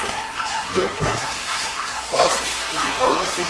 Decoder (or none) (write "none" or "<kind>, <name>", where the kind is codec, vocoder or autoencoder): codec, SNAC